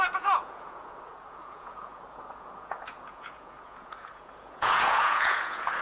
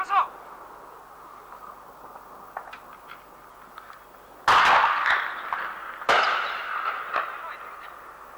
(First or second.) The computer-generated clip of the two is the first